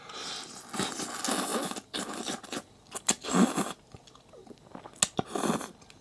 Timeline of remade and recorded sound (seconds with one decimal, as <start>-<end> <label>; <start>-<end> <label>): 0.0-1.5 recorded; 1.5-4.3 remade; 4.3-6.0 recorded